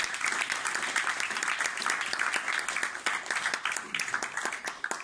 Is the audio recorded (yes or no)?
yes